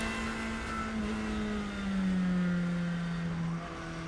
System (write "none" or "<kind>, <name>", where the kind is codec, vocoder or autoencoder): none